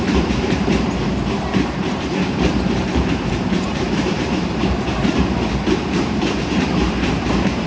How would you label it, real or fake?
fake